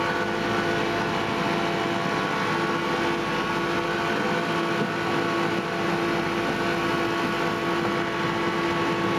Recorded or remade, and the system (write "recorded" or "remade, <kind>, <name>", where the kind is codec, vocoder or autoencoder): recorded